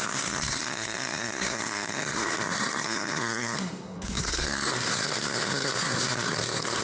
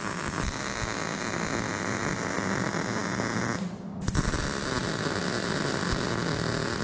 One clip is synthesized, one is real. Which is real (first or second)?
second